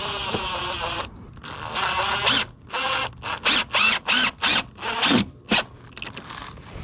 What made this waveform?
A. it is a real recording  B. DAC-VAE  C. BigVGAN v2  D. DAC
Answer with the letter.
A